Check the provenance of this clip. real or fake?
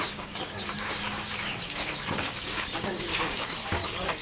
fake